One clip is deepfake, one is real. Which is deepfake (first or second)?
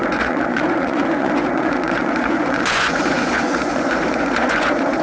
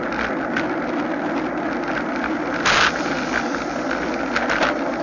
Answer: first